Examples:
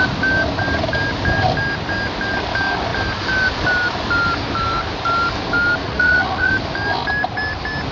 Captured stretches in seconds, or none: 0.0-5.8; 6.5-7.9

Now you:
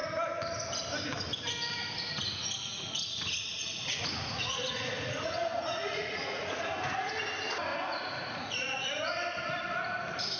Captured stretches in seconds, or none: 0.0-2.7; 7.1-7.7; 9.1-10.4

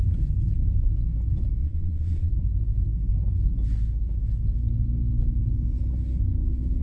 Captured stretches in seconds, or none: 0.0-1.6; 2.3-6.8